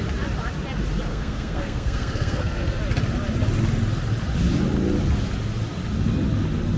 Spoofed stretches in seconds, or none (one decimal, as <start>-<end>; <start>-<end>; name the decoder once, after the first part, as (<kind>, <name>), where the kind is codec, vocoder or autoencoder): 1.1-2.8 (codec, SNAC)

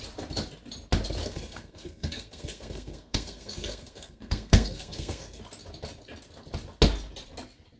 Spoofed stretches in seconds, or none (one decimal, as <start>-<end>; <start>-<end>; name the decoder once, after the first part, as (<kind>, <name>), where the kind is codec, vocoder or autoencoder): 1.2-5.4 (codec, SNAC)

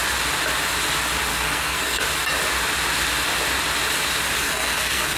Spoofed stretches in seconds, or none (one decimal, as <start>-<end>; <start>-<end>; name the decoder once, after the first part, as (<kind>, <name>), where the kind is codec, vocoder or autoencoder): 1.3-2.0 (codec, SNAC); 4.4-5.2

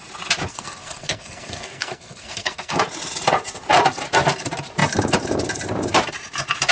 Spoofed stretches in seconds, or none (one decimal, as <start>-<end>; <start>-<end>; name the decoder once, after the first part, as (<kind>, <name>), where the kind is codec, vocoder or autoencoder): 0.5-2.8 (codec, SNAC)

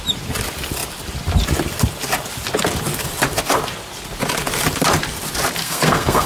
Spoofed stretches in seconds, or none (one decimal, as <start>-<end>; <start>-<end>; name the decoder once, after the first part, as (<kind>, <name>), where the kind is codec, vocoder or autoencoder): 5.6-6.3 (codec, SNAC)

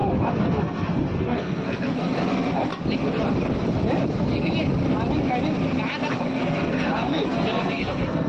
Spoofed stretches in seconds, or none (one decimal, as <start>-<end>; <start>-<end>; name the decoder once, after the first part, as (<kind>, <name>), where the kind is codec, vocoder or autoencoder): 0.0-2.7 (codec, SNAC); 4.1-4.5; 6.2-8.3

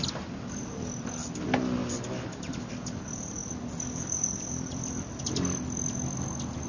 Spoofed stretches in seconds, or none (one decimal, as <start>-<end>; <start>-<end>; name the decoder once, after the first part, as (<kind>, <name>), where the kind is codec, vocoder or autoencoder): none